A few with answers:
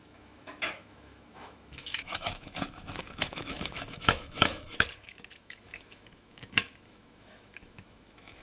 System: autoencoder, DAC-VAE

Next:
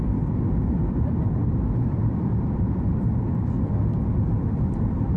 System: vocoder, BigVGAN v2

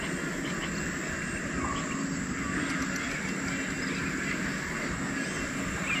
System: none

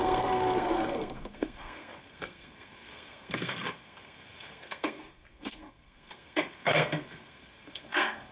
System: codec, SNAC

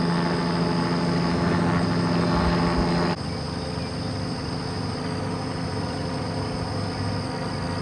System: none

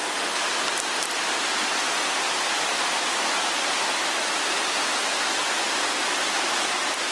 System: none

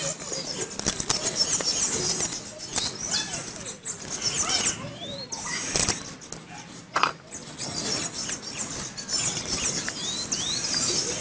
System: none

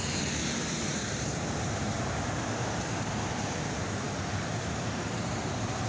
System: vocoder, BigVGAN v2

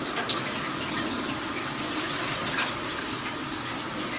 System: none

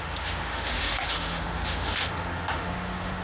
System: autoencoder, DAC-VAE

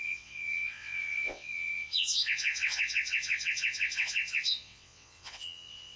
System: vocoder, WaveNeXt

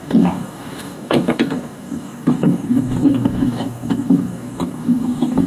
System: codec, DAC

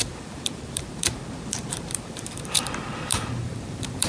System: vocoder, BigVGAN v2